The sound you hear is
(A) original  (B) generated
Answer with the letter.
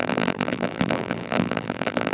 B